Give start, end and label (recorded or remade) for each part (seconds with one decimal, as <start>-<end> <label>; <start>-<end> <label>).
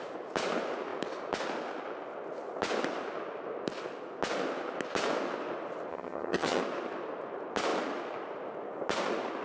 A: 0.0-5.9 recorded; 5.9-6.6 remade; 6.6-9.4 recorded